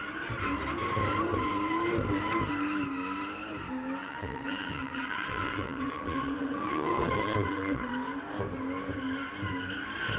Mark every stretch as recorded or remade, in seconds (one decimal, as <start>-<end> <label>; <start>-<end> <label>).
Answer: 0.0-4.0 recorded; 4.0-7.9 remade; 7.9-10.2 recorded